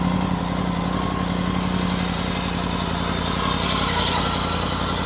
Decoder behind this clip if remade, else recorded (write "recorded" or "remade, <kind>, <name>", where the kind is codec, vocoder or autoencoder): recorded